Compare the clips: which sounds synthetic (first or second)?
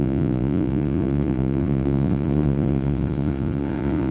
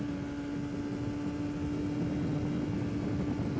first